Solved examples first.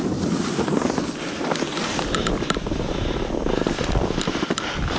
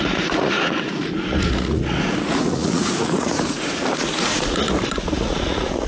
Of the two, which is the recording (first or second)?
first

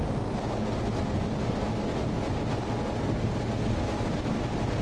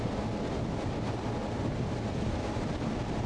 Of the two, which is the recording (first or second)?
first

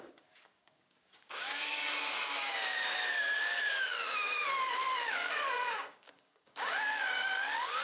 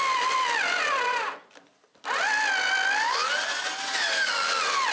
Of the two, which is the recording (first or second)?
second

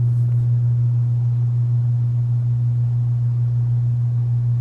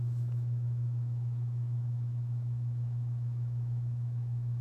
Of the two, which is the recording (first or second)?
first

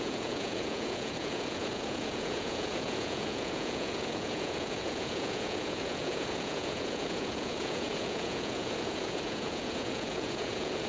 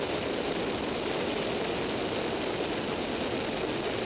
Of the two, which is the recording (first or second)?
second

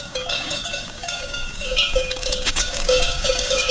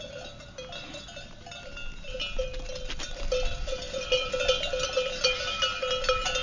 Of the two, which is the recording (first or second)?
second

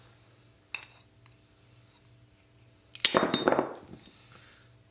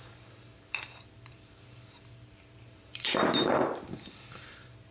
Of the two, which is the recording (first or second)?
first